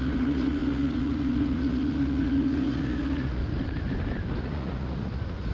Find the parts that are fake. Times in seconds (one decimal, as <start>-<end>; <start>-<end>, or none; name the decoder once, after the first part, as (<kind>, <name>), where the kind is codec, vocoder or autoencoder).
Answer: 0.0-3.4 (vocoder, Vocos); 4.4-5.5